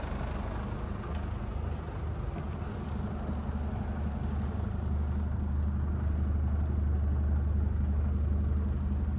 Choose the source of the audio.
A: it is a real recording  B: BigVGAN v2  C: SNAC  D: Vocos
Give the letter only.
A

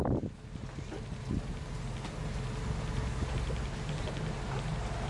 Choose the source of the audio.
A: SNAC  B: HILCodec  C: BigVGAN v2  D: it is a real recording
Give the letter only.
D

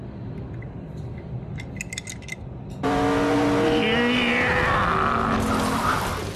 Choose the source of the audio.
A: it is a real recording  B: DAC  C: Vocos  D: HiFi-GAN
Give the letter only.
A